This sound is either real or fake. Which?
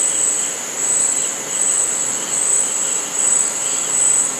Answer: real